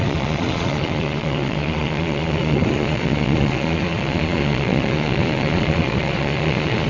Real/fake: fake